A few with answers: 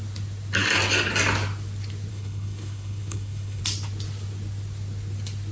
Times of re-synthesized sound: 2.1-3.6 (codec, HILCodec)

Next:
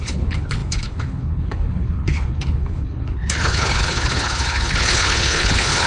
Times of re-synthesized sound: 0.0-5.9 (codec, HILCodec)

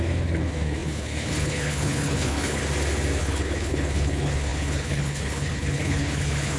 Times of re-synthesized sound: 0.0-2.6 (codec, HILCodec); 3.2-6.6

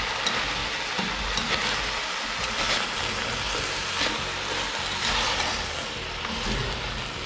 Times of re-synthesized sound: none